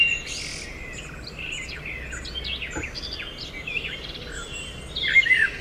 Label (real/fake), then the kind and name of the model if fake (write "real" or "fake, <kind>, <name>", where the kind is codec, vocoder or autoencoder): real